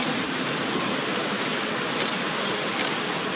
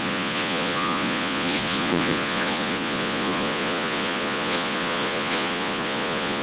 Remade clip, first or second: second